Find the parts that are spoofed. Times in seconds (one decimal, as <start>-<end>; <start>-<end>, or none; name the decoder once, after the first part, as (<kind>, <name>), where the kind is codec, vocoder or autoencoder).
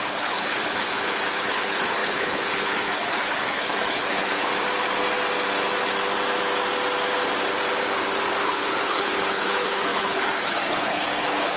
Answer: 0.0-4.5 (codec, HILCodec); 8.4-11.6